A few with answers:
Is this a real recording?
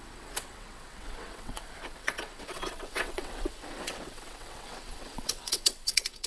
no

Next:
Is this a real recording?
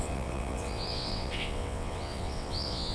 no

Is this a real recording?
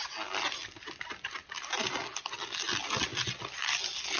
yes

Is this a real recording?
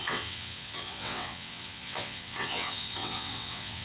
no